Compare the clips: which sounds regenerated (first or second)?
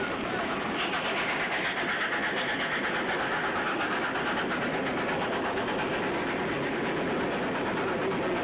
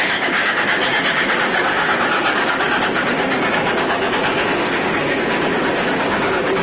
second